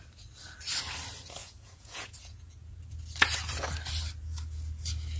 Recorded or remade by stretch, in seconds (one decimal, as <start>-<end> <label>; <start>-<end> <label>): 0.0-1.4 recorded; 1.4-2.8 remade; 2.8-5.2 recorded